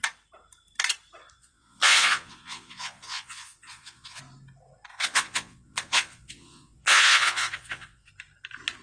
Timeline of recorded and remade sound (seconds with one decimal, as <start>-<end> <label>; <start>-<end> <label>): 0.0-1.4 recorded; 1.4-4.2 remade; 4.2-4.9 recorded; 4.9-8.1 remade; 8.1-8.8 recorded

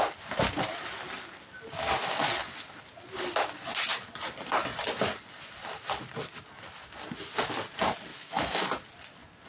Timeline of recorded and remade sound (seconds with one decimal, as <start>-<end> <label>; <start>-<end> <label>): 0.0-8.1 recorded; 8.1-8.6 remade; 8.6-9.5 recorded

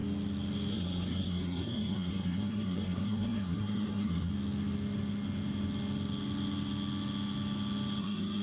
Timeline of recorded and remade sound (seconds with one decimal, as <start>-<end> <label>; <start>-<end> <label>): 0.0-0.7 recorded; 0.7-4.3 remade; 4.3-8.0 recorded; 8.0-8.4 remade